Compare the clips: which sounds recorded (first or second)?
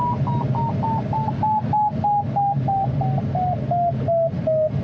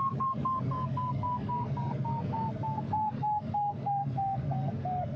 first